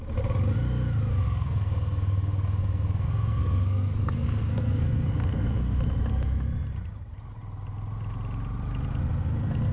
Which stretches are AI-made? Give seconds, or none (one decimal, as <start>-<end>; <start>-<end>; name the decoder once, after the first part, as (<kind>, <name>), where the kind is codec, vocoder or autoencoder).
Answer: 1.1-5.8 (codec, SNAC)